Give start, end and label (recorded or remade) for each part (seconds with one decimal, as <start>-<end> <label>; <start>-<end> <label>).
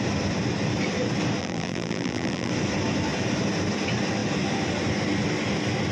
0.0-1.4 recorded; 1.4-2.5 remade; 2.5-5.9 recorded